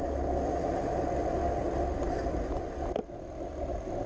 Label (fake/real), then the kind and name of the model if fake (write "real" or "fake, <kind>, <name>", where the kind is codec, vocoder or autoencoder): real